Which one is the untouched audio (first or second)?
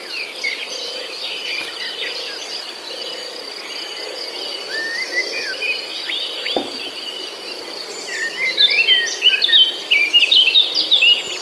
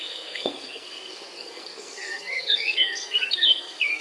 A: first